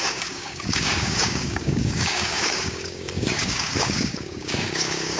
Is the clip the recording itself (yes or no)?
no